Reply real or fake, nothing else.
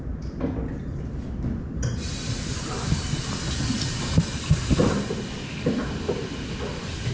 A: real